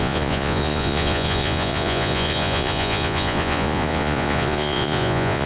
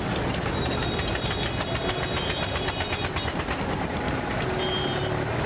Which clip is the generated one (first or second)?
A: first